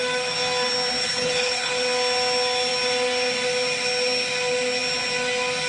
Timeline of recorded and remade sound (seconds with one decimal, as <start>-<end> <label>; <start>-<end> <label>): 0.0-1.0 recorded; 1.0-1.7 remade; 1.7-5.7 recorded